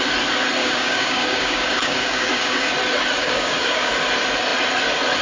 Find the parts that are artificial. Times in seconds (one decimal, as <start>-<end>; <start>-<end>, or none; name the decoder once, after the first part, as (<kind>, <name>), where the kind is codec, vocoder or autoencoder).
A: 0.6-2.7 (codec, DAC); 3.2-3.9